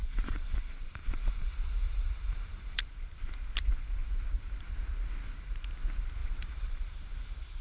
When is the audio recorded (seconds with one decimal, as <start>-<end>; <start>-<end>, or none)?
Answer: 2.8-6.2; 7.1-7.6